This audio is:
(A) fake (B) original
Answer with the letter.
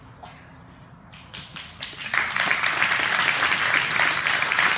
B